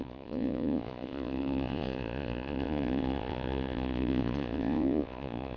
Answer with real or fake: fake